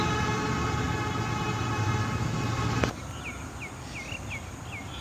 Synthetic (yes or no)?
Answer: no